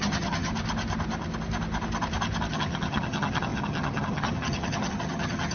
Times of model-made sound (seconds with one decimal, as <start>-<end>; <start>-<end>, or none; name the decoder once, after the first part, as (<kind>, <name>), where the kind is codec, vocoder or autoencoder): 0.0-0.5 (vocoder, HiFi-GAN); 2.5-5.5